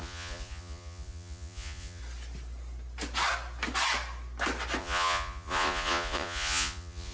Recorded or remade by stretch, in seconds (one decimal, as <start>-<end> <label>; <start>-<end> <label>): 0.0-2.0 remade; 2.0-4.8 recorded; 4.8-7.1 remade